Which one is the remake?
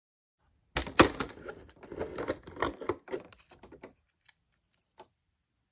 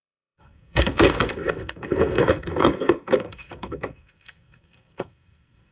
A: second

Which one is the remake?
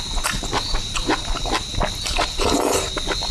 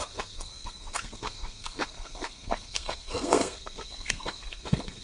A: second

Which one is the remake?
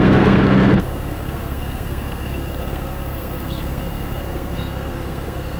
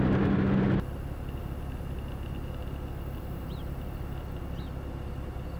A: first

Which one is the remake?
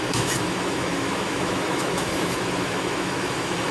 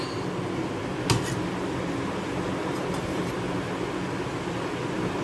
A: first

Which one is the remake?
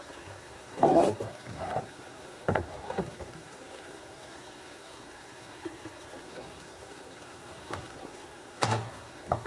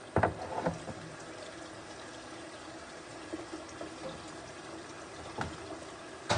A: first